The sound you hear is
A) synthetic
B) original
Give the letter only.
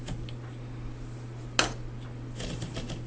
B